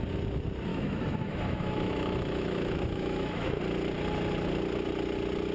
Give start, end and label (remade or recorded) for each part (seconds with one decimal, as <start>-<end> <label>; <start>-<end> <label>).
0.0-0.7 recorded; 0.7-3.6 remade; 3.6-5.5 recorded